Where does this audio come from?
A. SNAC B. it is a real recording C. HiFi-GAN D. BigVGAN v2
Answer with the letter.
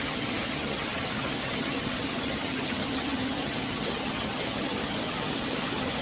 C